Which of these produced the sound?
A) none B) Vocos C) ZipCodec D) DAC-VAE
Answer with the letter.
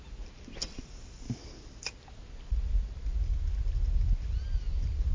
A